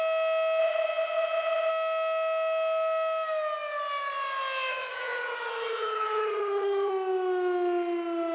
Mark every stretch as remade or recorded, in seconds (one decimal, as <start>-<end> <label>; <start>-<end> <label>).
0.0-0.6 recorded; 0.6-1.7 remade; 1.7-4.7 recorded; 4.7-6.9 remade; 6.9-8.3 recorded